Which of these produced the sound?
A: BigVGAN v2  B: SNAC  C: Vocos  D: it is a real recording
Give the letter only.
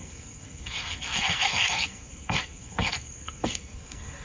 B